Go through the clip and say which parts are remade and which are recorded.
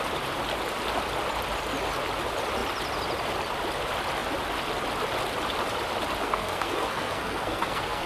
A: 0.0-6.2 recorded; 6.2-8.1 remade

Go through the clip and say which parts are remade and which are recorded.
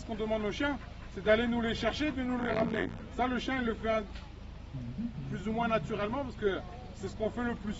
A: 0.0-2.4 recorded; 2.4-3.0 remade; 3.0-7.8 recorded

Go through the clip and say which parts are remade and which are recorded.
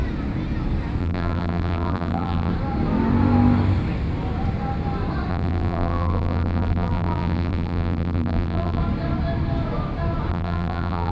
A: 0.0-1.0 recorded; 1.0-2.5 remade; 2.5-5.3 recorded; 5.3-8.8 remade; 8.8-10.3 recorded; 10.3-11.1 remade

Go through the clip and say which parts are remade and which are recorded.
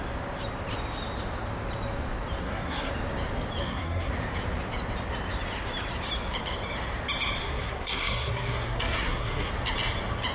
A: 0.0-2.4 recorded; 2.4-2.9 remade; 2.9-3.6 recorded; 3.6-4.1 remade; 4.1-7.4 recorded; 7.4-9.5 remade; 9.5-10.3 recorded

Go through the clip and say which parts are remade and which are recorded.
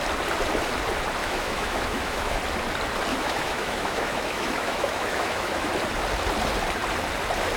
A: 0.0-1.2 recorded; 1.2-2.4 remade; 2.4-3.1 recorded; 3.1-5.7 remade; 5.7-7.6 recorded